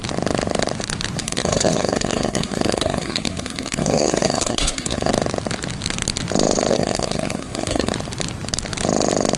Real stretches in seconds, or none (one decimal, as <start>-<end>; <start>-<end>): 0.0-1.2; 5.1-6.7; 7.9-9.4